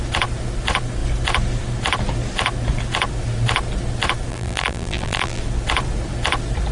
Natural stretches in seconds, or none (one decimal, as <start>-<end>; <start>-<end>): 0.0-4.3; 5.4-6.7